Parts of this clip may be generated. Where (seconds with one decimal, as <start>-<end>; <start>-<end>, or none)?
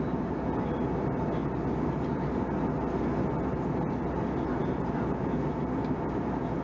none